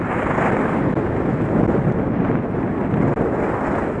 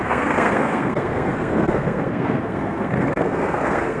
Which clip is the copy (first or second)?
second